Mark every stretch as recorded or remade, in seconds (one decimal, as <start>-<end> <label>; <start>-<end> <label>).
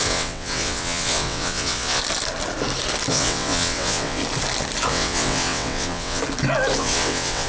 0.0-2.0 remade; 2.0-3.1 recorded; 3.1-4.2 remade; 4.2-4.9 recorded; 4.9-6.2 remade; 6.2-6.8 recorded; 6.8-7.5 remade